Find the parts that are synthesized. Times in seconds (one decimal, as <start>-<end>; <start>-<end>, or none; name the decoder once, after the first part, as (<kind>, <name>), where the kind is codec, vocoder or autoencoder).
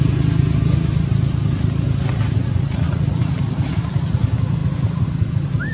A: 2.4-3.2 (vocoder, Vocos)